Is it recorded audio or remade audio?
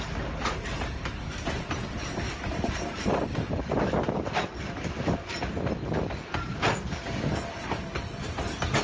recorded